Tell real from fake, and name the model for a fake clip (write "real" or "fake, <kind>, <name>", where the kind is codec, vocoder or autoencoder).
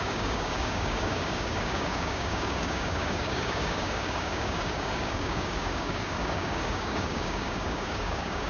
fake, codec, DAC